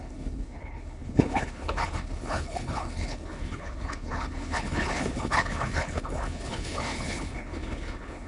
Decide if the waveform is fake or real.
fake